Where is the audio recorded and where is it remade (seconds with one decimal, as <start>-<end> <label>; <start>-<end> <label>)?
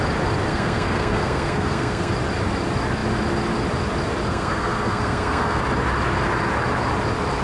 0.0-0.5 recorded; 0.5-2.1 remade; 2.1-4.3 recorded; 4.3-5.6 remade; 5.6-7.4 recorded